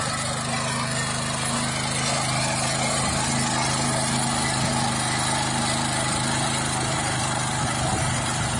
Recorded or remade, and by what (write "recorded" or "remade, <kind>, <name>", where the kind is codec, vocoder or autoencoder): recorded